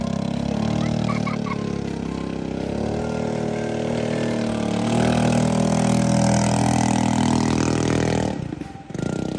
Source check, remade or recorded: recorded